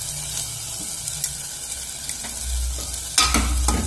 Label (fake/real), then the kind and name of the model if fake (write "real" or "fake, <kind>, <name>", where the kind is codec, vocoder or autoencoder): real